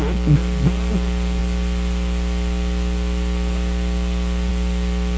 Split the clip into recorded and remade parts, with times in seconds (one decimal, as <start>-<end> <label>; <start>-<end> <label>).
0.0-5.2 recorded